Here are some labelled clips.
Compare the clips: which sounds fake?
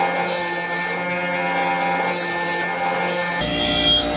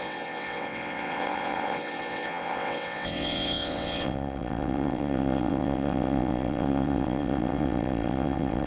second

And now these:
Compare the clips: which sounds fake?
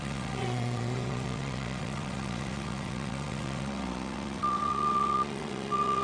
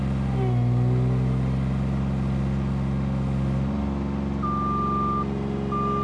first